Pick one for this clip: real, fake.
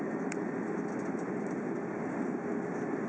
real